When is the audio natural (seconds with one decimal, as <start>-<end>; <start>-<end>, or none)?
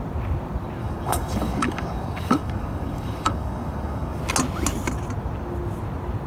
0.0-0.8; 4.2-6.3